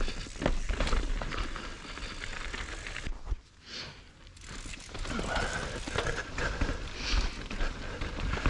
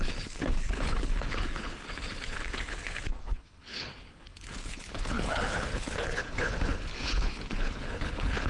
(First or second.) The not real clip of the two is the second